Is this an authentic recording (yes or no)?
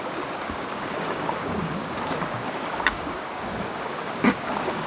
no